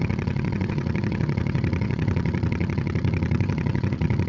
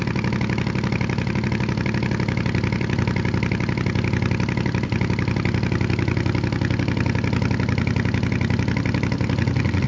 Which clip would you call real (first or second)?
second